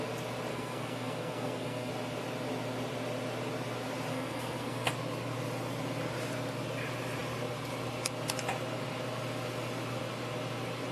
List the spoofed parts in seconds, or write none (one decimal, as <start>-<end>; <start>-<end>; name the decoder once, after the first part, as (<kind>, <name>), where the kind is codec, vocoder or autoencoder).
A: 0.5-1.9 (codec, SNAC); 4.1-4.9

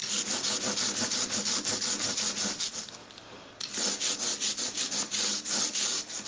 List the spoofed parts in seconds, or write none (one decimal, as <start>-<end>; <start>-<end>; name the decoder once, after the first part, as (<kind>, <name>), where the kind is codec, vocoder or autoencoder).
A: none

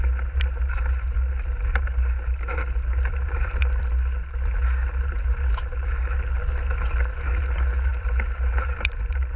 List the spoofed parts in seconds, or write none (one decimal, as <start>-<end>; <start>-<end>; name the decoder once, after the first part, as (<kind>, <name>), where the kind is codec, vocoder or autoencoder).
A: 3.2-3.9 (vocoder, BigVGAN v2); 7.9-9.4

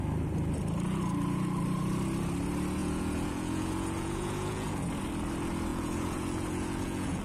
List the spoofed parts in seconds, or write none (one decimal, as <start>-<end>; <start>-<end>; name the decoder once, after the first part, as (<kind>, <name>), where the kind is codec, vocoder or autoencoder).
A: 2.8-4.8 (vocoder, Vocos); 5.7-7.2

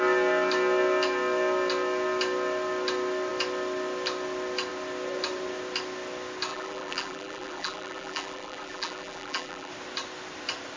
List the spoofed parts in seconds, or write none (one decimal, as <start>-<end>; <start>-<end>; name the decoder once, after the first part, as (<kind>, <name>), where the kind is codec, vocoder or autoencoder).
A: 6.5-9.7 (vocoder, BigVGAN v2)

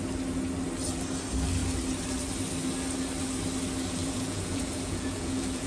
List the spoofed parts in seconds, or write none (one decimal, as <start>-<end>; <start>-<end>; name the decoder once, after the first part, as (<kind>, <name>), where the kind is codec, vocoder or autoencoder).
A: 4.0-5.7 (vocoder, Vocos)

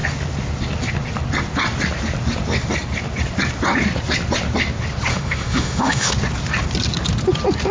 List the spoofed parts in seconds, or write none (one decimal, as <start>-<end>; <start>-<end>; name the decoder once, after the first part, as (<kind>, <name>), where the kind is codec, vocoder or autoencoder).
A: 5.1-6.1 (autoencoder, DAC-VAE)

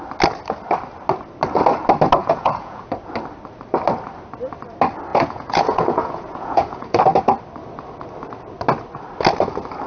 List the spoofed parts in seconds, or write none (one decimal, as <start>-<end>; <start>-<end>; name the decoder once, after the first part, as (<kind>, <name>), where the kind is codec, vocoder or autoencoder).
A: 2.2-2.9 (vocoder, Vocos); 5.1-7.0